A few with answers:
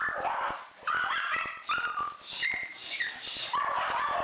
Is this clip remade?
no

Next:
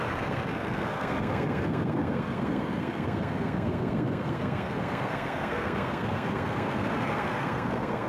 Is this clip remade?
yes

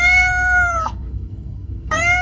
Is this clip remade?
yes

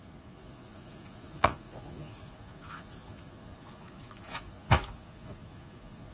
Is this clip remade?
yes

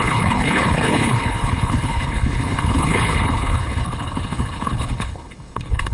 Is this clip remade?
yes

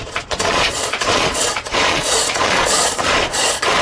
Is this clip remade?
yes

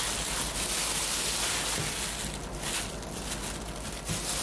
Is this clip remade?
no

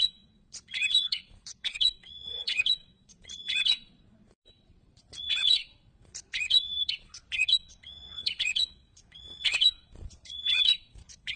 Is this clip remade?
yes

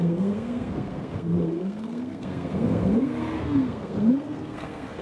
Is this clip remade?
yes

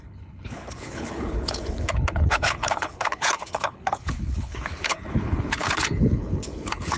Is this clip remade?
yes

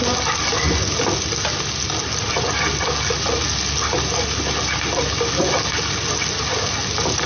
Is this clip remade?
no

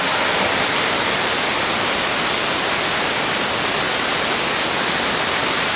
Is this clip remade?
no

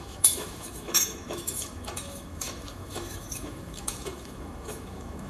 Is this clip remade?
yes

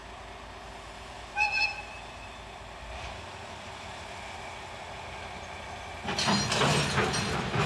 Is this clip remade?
no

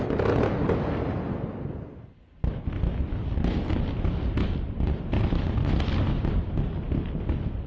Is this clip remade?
yes